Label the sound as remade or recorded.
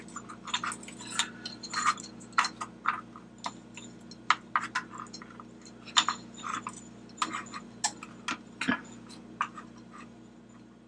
recorded